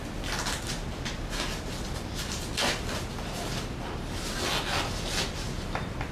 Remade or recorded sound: recorded